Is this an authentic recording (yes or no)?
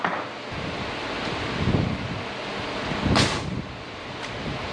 yes